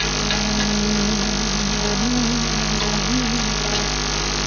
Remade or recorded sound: recorded